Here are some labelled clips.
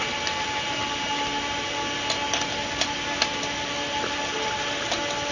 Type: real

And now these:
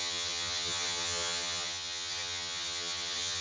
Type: fake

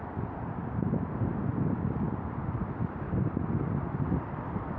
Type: real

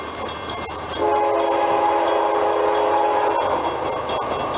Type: real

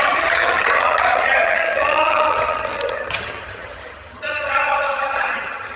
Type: fake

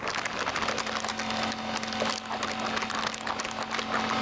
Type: real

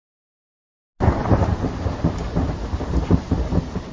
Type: real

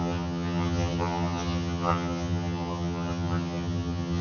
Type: fake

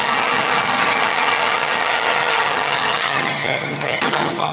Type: fake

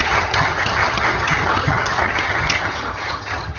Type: fake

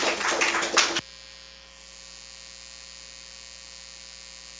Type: real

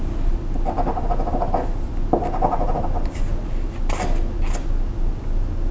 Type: real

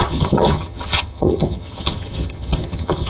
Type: fake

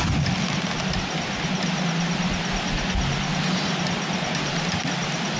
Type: real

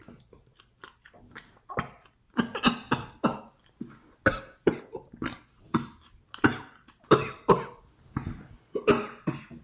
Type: real